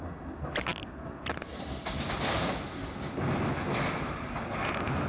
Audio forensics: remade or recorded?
recorded